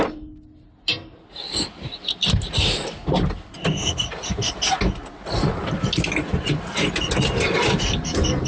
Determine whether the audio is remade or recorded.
recorded